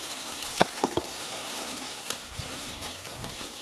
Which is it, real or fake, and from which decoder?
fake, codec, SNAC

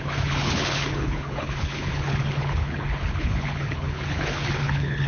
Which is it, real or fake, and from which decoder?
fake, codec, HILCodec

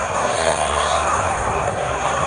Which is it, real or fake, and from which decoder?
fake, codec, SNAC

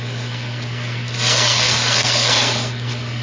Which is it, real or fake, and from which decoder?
fake, codec, SNAC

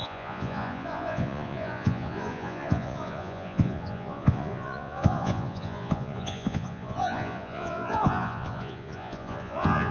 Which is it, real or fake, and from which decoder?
fake, vocoder, Vocos